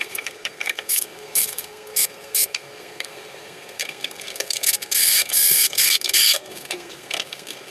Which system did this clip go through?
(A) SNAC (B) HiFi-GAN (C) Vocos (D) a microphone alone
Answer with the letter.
A